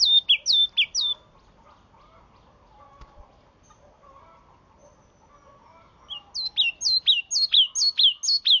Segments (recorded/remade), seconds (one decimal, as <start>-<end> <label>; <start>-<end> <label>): 0.0-8.6 recorded